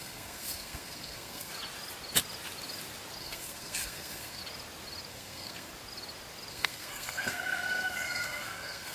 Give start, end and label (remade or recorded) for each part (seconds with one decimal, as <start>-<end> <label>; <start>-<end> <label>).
0.0-1.5 remade; 1.5-3.2 recorded; 3.2-4.4 remade; 4.4-5.1 recorded; 5.1-5.7 remade; 5.7-6.5 recorded; 6.5-8.9 remade